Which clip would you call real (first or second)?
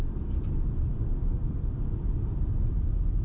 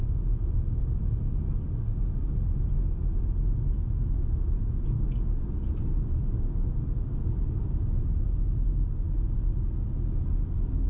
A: second